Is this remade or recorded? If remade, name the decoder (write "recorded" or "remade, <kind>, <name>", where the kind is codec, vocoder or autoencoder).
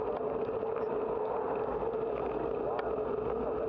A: recorded